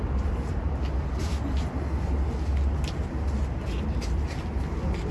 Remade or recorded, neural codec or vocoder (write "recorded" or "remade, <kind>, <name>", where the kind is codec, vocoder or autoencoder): recorded